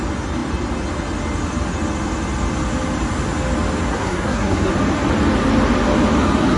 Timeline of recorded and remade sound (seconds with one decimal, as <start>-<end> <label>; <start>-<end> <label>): 0.0-3.9 recorded; 3.9-4.7 remade; 4.7-6.6 recorded